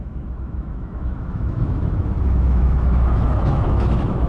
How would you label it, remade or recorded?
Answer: remade